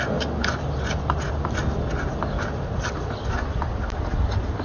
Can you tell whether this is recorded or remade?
recorded